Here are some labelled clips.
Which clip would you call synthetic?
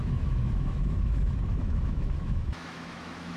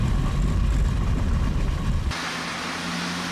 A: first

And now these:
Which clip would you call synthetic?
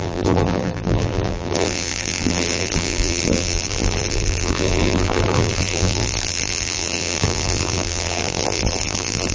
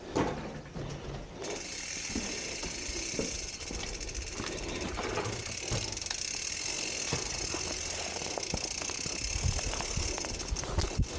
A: first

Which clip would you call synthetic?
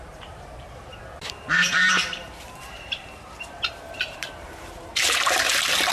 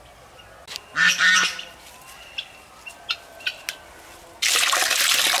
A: first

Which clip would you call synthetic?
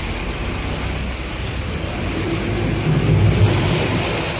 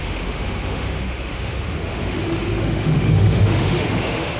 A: second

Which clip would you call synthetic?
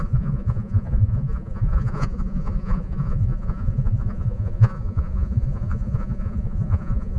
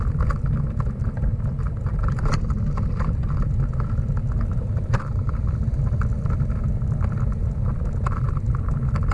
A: first